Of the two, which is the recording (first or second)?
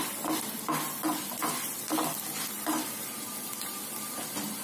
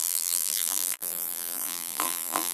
first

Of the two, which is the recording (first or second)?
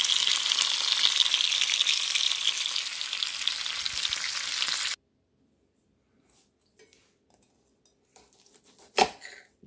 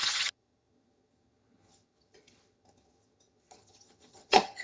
first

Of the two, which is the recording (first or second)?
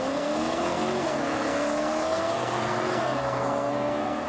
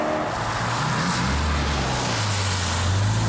second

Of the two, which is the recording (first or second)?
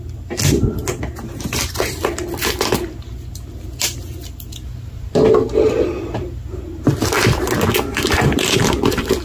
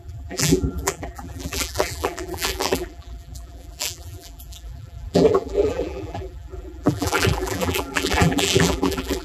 first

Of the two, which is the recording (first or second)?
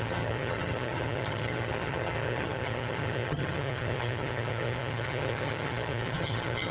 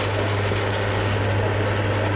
second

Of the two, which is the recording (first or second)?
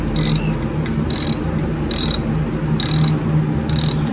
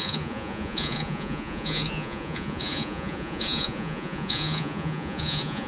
first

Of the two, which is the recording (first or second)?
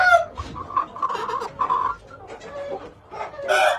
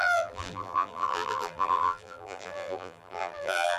first